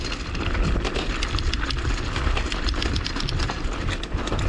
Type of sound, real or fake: fake